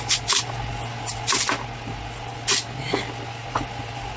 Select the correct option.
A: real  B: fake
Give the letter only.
A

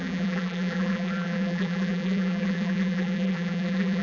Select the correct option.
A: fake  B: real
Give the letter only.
A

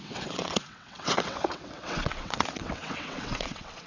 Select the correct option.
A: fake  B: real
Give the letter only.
A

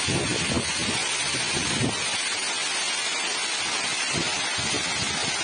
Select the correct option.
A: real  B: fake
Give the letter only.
A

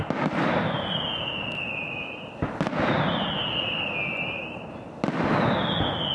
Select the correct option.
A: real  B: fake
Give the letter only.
A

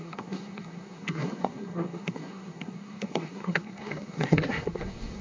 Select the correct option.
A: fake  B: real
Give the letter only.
A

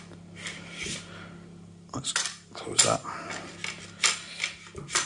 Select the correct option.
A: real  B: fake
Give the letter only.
A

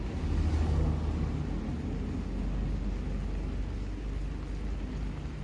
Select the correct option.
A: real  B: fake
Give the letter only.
A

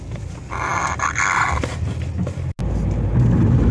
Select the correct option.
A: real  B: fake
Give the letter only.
A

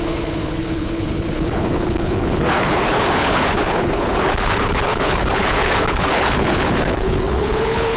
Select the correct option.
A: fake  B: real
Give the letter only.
A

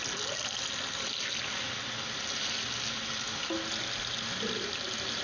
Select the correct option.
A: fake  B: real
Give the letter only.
B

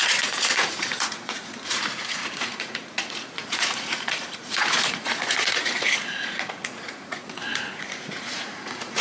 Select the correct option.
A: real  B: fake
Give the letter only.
B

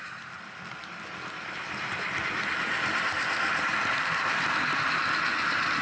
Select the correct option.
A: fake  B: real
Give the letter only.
A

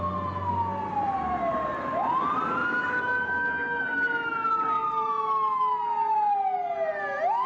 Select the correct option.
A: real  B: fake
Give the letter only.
A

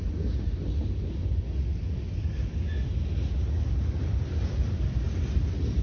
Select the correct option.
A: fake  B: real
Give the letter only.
B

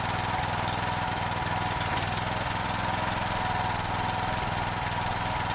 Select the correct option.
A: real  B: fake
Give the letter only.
A